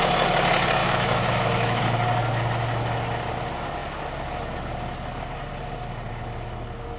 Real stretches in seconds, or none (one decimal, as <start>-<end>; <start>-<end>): 0.0-0.8; 1.8-7.0